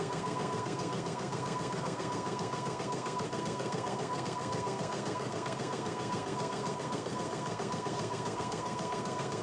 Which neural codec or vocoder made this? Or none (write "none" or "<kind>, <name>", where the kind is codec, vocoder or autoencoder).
codec, SNAC